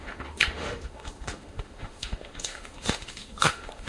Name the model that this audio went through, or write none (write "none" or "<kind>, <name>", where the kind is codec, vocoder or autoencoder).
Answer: autoencoder, DAC-VAE